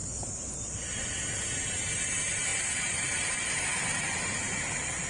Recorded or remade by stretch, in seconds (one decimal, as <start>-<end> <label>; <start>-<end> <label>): 0.0-5.1 recorded